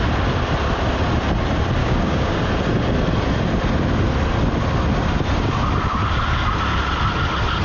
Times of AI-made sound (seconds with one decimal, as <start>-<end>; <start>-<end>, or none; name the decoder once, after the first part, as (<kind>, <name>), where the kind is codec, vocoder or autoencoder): 1.8-2.4 (codec, DAC)